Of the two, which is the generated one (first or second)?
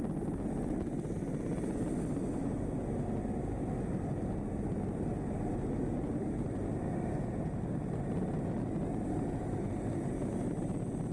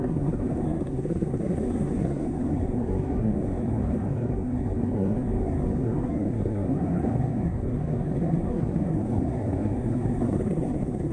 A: second